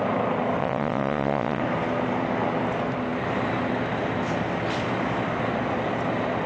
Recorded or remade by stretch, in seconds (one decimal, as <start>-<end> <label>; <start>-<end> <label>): 0.0-0.6 recorded; 0.6-1.6 remade; 1.6-6.5 recorded